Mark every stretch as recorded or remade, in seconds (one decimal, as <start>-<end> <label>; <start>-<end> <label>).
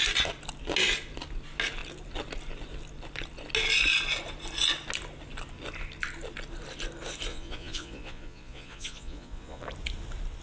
0.0-7.3 recorded; 7.3-9.6 remade; 9.6-10.4 recorded